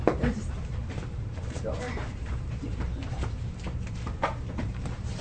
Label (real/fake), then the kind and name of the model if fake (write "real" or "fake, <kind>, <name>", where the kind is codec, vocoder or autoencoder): fake, vocoder, BigVGAN v2